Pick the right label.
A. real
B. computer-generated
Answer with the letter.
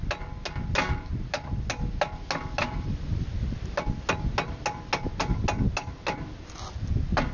A